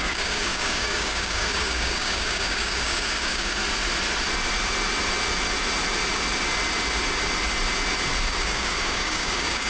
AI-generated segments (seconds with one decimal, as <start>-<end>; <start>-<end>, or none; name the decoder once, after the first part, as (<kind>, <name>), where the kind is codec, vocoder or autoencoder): 0.0-3.6 (codec, DAC); 8.3-9.7